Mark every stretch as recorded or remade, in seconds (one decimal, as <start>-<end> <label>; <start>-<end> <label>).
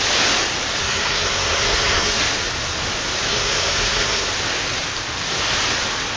0.0-0.8 recorded; 0.8-2.2 remade; 2.2-3.3 recorded; 3.3-4.3 remade; 4.3-6.2 recorded